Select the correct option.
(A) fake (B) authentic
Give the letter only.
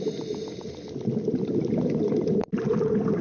A